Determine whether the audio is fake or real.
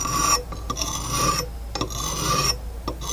real